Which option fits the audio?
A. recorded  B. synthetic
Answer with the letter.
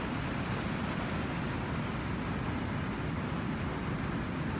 A